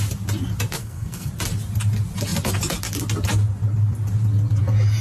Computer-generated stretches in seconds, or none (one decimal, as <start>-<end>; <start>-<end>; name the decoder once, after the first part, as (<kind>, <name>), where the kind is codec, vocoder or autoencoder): 0.8-1.3 (codec, SNAC)